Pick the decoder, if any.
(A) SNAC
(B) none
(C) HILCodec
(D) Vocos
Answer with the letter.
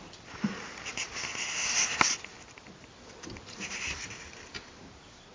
B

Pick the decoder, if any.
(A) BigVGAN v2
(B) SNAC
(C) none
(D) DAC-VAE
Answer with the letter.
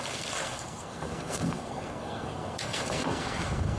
B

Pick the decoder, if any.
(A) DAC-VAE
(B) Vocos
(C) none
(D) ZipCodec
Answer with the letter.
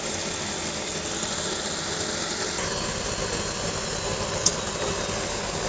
C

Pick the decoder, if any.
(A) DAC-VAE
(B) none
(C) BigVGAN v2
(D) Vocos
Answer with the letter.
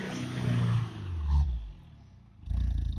B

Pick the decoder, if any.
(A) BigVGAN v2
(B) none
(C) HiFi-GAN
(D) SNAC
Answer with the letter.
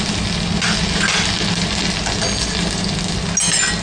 B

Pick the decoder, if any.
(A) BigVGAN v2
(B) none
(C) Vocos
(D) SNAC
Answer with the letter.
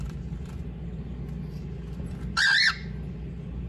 B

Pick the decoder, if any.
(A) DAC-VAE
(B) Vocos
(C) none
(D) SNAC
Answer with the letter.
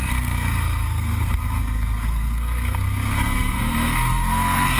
D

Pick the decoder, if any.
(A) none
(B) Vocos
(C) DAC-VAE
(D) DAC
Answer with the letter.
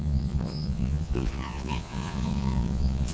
B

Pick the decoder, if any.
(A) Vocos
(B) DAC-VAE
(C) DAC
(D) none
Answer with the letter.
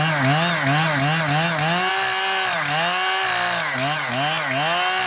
D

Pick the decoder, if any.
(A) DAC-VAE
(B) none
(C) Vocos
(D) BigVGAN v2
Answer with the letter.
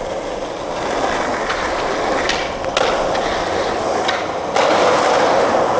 B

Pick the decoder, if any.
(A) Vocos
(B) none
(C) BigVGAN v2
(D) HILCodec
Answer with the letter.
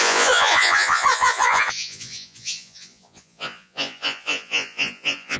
A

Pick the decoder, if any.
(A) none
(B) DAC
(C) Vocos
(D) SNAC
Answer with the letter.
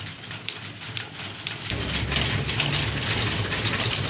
A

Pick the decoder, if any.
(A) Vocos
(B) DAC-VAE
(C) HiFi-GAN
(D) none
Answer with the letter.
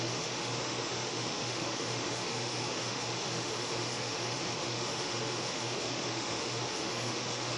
B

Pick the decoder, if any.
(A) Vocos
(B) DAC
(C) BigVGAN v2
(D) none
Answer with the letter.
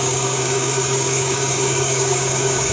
B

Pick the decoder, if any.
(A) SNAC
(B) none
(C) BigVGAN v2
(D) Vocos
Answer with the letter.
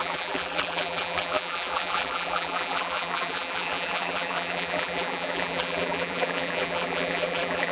C